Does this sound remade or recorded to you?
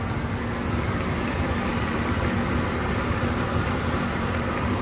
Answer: remade